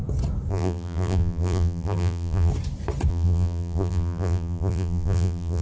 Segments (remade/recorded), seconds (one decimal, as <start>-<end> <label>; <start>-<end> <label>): 0.0-0.5 recorded; 0.5-2.5 remade; 2.5-3.1 recorded; 3.1-5.6 remade